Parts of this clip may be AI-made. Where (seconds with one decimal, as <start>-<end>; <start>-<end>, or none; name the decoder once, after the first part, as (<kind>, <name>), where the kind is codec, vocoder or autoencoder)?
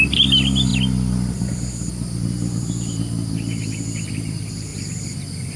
none